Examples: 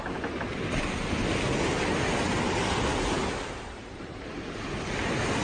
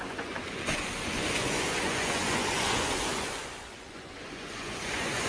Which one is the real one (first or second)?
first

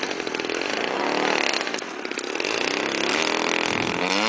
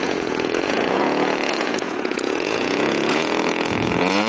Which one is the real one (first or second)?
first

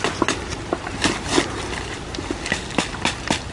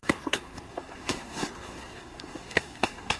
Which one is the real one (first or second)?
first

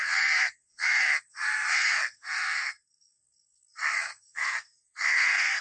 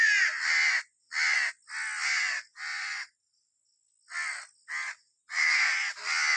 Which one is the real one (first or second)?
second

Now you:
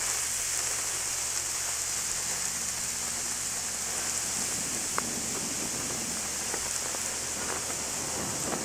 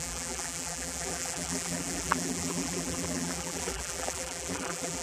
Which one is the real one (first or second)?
first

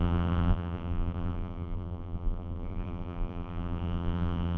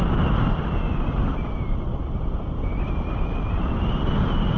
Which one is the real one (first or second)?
second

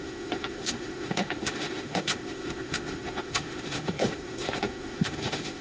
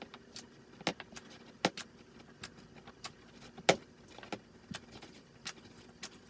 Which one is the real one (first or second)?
second